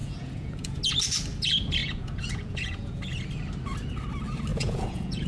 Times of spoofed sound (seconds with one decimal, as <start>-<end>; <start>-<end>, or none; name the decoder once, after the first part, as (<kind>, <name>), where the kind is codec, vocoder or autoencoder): 0.0-0.8 (vocoder, Vocos); 1.8-3.1; 4.5-5.3